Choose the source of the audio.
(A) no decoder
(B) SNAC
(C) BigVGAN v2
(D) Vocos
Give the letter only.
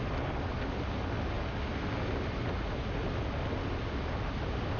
A